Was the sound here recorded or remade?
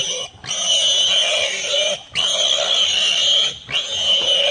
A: recorded